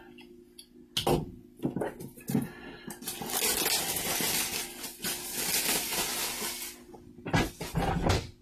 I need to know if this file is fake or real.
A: real